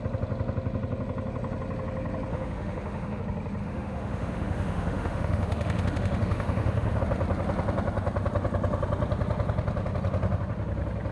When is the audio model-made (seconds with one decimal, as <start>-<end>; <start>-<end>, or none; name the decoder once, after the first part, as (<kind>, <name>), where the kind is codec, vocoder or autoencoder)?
2.3-3.2 (autoencoder, DAC-VAE); 3.6-7.0